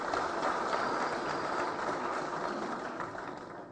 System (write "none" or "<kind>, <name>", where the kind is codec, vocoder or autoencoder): none